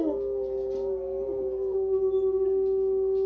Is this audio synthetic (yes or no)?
no